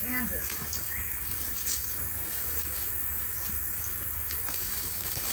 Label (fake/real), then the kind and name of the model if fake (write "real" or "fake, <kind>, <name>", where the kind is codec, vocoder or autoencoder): fake, codec, DAC